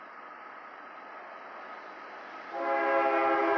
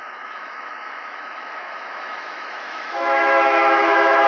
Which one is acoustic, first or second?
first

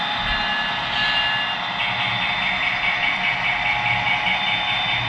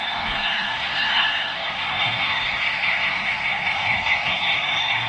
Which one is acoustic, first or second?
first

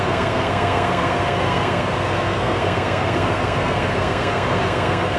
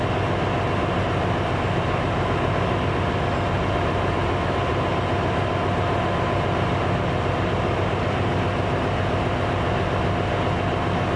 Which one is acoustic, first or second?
second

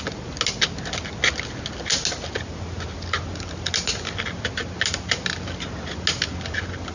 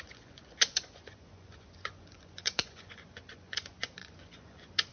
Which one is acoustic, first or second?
first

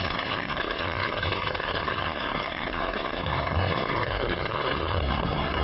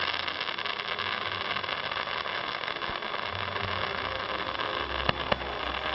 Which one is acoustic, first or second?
second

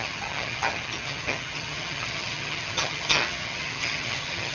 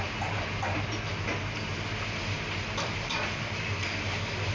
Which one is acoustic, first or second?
second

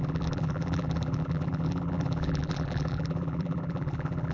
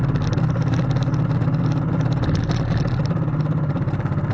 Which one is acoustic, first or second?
second